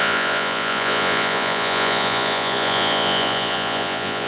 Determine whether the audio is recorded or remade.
remade